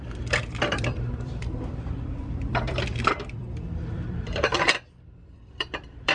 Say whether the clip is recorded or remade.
remade